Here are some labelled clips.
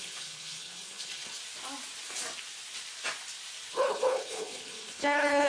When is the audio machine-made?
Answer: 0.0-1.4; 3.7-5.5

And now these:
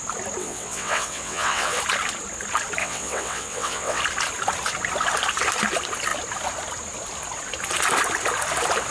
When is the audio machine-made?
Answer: 0.4-1.8; 2.8-4.0

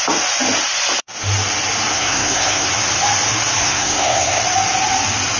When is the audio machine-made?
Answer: 1.9-2.7; 3.6-4.4

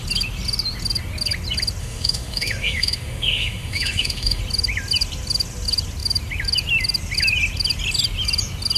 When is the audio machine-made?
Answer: 1.8-4.4

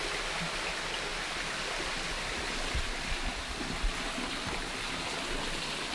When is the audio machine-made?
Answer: none

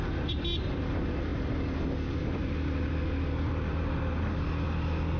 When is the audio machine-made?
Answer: none

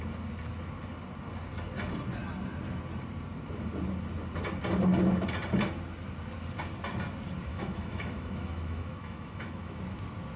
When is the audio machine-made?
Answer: 7.5-9.8

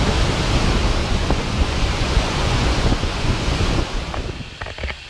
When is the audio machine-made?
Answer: 1.0-4.1